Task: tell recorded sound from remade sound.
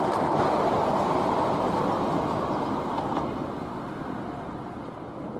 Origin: recorded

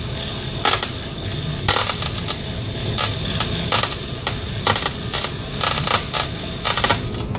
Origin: recorded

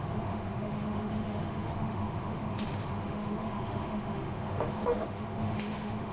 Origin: remade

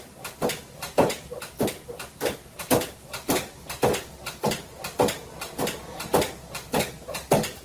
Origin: recorded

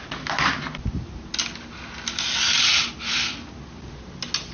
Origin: recorded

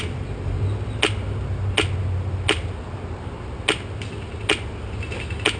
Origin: recorded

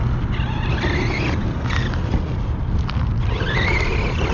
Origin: recorded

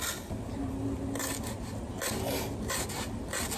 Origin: recorded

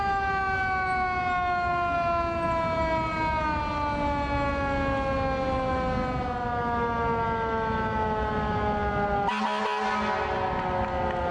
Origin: recorded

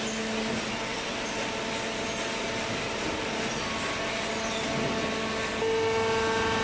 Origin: recorded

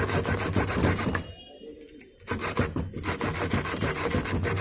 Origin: recorded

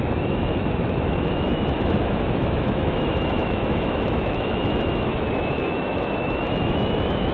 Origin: remade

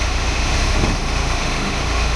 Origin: remade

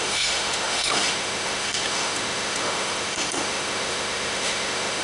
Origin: remade